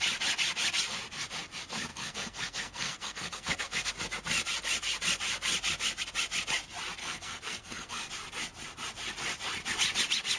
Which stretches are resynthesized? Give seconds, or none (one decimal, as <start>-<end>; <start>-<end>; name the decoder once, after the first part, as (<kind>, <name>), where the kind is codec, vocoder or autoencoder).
1.9-3.9 (codec, SNAC); 7.0-8.1